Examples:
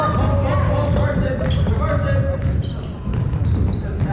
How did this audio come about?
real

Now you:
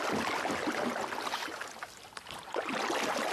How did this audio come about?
real